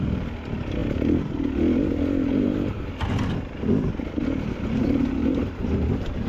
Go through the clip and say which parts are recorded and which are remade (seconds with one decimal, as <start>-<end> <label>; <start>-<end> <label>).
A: 0.0-5.2 recorded; 5.2-6.3 remade